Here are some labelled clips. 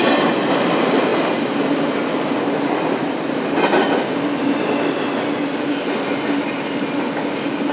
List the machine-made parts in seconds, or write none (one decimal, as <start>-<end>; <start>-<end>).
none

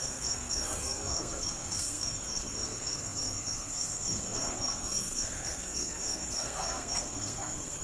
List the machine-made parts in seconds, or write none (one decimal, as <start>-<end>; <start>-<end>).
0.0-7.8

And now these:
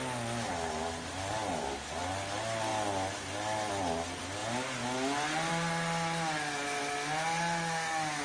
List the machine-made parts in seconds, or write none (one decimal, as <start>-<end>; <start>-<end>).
none

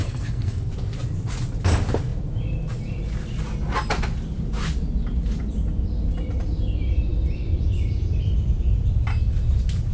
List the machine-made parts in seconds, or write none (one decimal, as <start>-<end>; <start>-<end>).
0.0-0.7

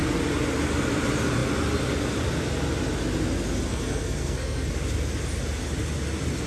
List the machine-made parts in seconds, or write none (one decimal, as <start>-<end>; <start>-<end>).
3.7-4.7